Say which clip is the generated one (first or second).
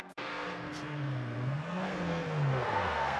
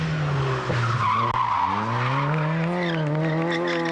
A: first